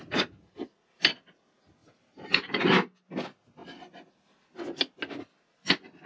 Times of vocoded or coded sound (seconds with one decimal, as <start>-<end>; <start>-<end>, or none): 1.8-2.6